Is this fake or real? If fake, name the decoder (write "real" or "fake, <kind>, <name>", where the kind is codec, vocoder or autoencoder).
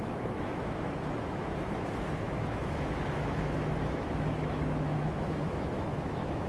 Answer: fake, autoencoder, DAC-VAE